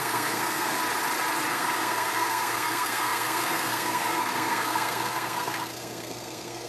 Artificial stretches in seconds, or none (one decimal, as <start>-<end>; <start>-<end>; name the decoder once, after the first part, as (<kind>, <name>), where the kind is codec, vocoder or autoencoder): 0.0-0.8 (codec, SNAC); 1.5-6.7